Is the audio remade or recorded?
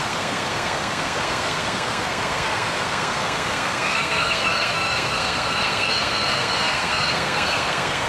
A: remade